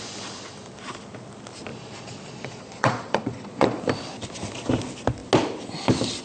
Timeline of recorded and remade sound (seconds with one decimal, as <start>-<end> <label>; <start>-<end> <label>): 0.0-1.7 recorded; 1.7-3.8 remade; 3.8-6.2 recorded